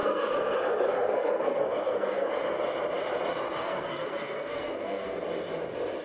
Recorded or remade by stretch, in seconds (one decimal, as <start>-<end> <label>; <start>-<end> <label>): 0.0-2.3 remade; 2.3-3.6 recorded; 3.6-5.2 remade; 5.2-6.0 recorded

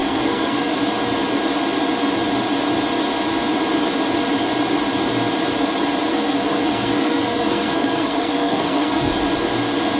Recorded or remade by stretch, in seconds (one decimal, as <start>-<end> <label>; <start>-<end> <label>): 0.0-0.8 remade; 0.8-6.1 recorded; 6.1-9.1 remade; 9.1-10.0 recorded

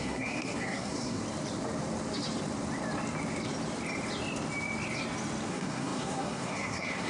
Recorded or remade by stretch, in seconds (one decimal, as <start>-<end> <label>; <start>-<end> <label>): 0.0-1.2 remade; 1.2-5.5 recorded; 5.5-7.1 remade

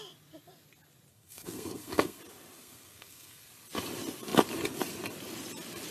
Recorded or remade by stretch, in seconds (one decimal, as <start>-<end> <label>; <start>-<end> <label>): 0.0-1.1 recorded; 1.1-2.2 remade; 2.2-2.6 recorded; 2.6-3.5 remade; 3.5-5.9 recorded

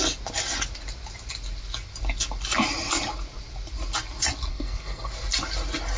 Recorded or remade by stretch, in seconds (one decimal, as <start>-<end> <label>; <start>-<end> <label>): 0.0-4.5 recorded; 4.5-5.1 remade; 5.1-6.0 recorded

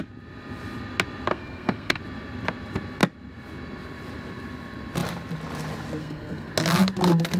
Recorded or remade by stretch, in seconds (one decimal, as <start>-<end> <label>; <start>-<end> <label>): 0.0-1.3 recorded; 1.3-2.0 remade; 2.0-6.0 recorded; 6.0-6.5 remade; 6.5-7.4 recorded

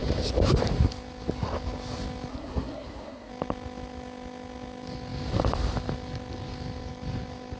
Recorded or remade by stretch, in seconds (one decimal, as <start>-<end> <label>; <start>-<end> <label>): 0.0-2.3 recorded; 2.3-3.3 remade; 3.3-7.6 recorded

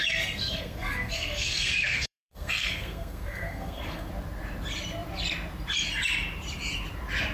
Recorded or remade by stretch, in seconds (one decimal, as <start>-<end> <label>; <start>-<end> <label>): 0.0-4.1 remade; 4.1-7.3 recorded